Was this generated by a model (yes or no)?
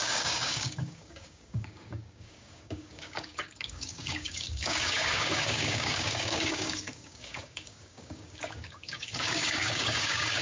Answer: yes